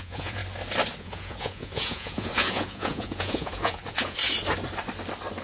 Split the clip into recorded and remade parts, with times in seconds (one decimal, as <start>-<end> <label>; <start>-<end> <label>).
0.0-0.4 remade; 0.4-1.0 recorded; 1.0-4.2 remade; 4.2-5.4 recorded